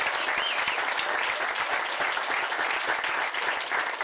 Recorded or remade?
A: recorded